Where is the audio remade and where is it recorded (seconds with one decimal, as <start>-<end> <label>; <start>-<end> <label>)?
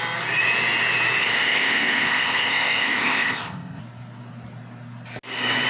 0.0-1.2 recorded; 1.2-3.8 remade; 3.8-5.7 recorded